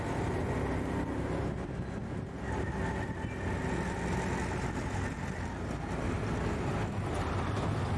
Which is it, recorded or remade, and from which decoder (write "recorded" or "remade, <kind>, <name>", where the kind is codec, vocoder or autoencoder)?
recorded